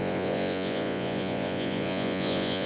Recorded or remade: remade